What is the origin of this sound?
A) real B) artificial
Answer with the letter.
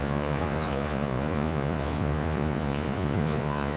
B